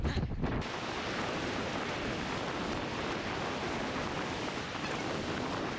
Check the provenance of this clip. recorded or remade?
recorded